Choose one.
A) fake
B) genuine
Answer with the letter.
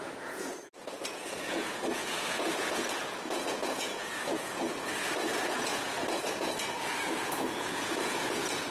A